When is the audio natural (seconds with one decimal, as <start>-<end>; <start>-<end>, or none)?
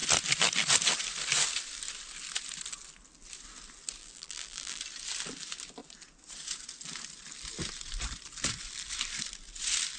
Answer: 0.0-4.0; 4.8-10.0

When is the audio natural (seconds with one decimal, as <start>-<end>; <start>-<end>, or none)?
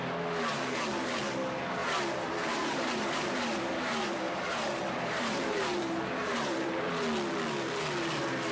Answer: 0.0-0.5; 1.2-1.8; 6.9-8.5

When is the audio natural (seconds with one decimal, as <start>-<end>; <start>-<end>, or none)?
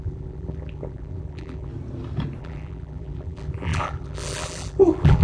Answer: 1.7-2.4